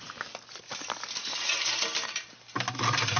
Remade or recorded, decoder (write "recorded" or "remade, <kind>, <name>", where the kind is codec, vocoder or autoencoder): recorded